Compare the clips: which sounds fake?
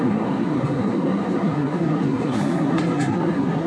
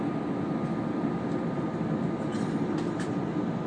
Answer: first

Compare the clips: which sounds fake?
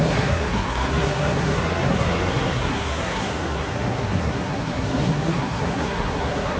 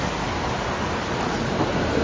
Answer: first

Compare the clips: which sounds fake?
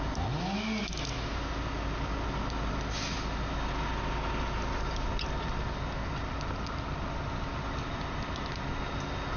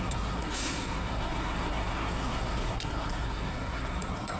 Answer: second